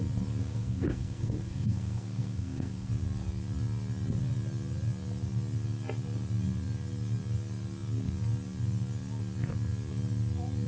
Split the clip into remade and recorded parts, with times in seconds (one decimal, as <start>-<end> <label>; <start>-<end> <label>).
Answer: 0.0-0.4 recorded; 0.4-2.9 remade; 2.9-10.7 recorded